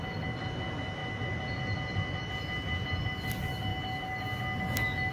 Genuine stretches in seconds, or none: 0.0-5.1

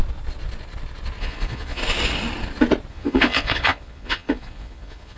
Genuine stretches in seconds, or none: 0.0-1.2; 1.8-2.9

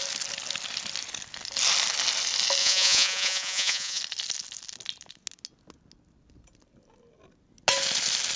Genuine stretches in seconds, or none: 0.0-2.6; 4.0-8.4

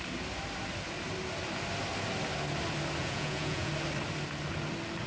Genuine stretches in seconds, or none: 0.0-3.0; 3.7-5.1

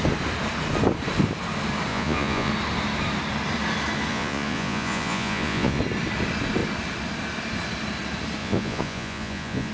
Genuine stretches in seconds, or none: 0.0-1.9; 2.5-4.1; 5.8-8.4

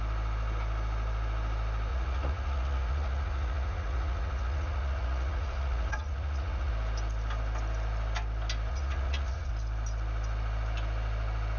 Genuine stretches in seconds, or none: 0.0-1.9; 6.7-8.7; 9.5-11.6